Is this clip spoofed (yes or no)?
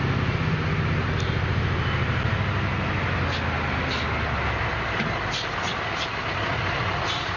no